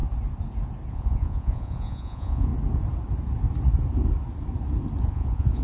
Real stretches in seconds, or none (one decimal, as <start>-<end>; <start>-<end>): 0.0-0.9; 2.5-5.1